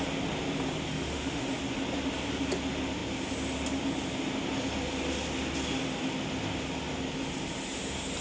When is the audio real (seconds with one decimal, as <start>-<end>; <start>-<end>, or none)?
0.0-0.9; 1.4-8.2